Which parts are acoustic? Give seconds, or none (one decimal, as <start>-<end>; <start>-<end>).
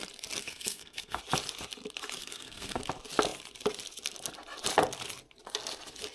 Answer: 0.0-0.4; 1.2-2.2; 2.8-6.1